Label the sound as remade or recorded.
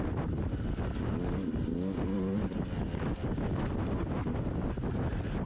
recorded